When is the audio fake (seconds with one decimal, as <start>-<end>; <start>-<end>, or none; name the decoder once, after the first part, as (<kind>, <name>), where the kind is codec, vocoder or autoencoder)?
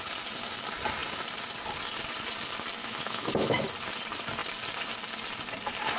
2.8-3.6 (autoencoder, DAC-VAE)